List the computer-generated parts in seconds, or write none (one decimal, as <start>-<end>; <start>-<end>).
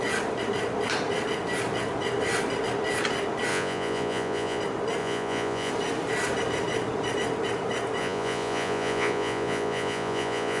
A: 3.5-4.6; 5.0-5.7; 8.0-10.6